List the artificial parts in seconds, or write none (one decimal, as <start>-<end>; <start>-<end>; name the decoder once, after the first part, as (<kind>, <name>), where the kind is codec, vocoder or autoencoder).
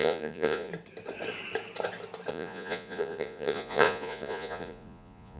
0.0-0.7 (vocoder, Vocos); 2.3-5.4